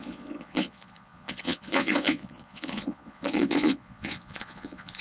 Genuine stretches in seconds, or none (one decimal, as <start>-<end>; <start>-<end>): none